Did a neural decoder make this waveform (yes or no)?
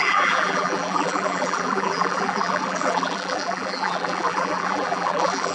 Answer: yes